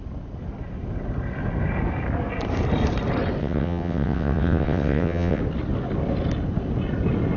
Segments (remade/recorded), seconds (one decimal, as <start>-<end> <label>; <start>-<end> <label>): 0.0-3.4 recorded; 3.4-5.4 remade; 5.4-7.4 recorded